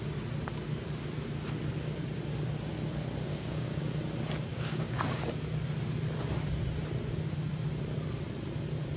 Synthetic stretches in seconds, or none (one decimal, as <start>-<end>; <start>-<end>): 3.3-3.8; 4.5-5.3

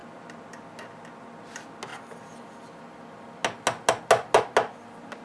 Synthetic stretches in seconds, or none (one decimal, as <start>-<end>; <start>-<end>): none

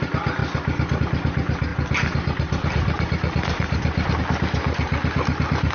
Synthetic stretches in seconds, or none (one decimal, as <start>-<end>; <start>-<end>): none

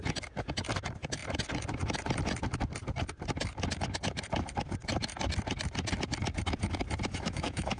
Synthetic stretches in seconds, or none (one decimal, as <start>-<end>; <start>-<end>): 7.1-7.8